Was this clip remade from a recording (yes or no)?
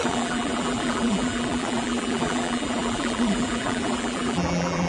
yes